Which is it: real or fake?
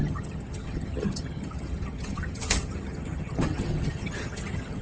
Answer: fake